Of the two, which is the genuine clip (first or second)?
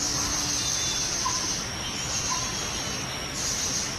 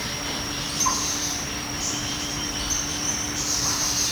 first